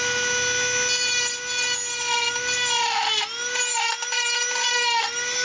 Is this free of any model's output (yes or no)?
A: yes